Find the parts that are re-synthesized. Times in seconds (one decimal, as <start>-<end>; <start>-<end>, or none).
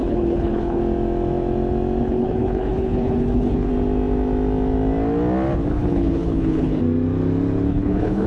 0.0-0.8; 2.0-3.7; 5.7-6.8; 7.7-8.3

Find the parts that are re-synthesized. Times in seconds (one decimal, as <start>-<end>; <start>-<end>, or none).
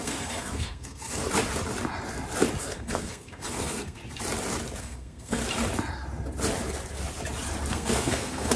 0.0-1.2; 2.6-4.0; 4.8-5.4; 7.7-8.6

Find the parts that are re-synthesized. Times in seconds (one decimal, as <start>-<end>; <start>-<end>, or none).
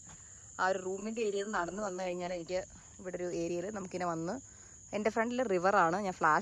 1.0-2.5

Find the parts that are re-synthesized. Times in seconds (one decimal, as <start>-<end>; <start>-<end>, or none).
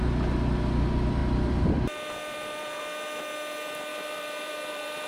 1.2-2.8; 3.9-5.1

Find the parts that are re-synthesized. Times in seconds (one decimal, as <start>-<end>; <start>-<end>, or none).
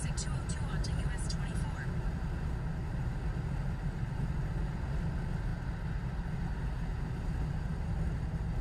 none